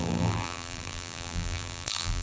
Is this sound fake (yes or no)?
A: yes